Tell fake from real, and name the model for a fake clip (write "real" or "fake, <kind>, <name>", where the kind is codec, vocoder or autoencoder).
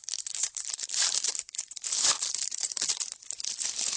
fake, vocoder, BigVGAN v2